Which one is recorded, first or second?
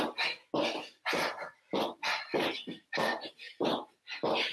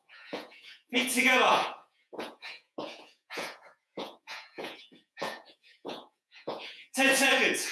first